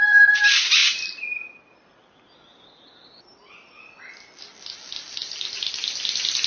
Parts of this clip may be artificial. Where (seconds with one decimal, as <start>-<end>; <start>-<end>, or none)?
0.0-6.5